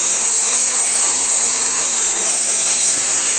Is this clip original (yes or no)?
no